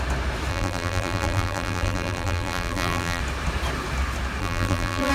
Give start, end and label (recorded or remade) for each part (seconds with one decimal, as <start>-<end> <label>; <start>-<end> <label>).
0.0-0.5 recorded; 0.5-3.2 remade; 3.2-4.4 recorded; 4.4-5.1 remade